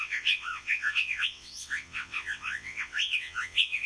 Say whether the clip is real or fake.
fake